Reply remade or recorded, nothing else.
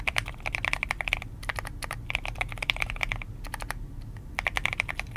recorded